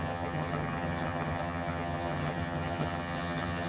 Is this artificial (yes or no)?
yes